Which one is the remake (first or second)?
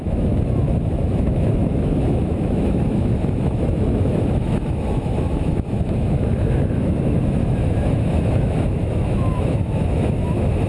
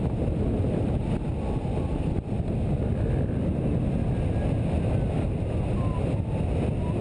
first